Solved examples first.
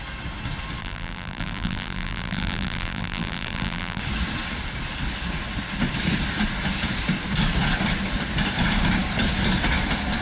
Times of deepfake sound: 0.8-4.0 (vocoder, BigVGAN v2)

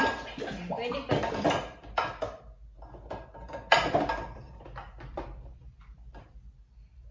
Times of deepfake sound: 0.9-2.2 (vocoder, BigVGAN v2); 4.1-6.5

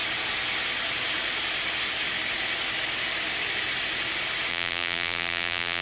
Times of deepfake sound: 4.5-5.8 (vocoder, BigVGAN v2)

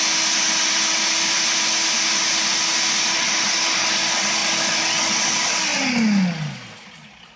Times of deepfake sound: none

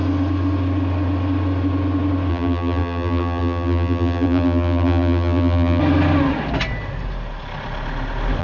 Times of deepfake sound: 2.3-5.8 (vocoder, BigVGAN v2)

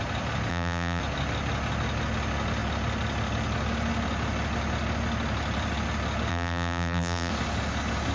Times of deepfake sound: 0.5-1.0 (vocoder, BigVGAN v2); 6.3-7.3

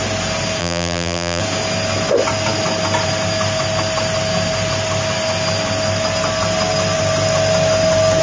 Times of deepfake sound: 0.6-1.4 (vocoder, BigVGAN v2)